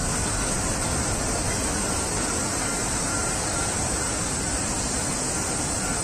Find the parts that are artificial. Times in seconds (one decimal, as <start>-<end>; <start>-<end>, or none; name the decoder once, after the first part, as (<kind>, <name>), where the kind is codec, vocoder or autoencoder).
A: 1.0-1.8 (vocoder, BigVGAN v2); 2.4-6.0